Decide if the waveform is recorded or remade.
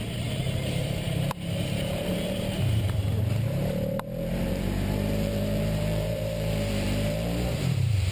remade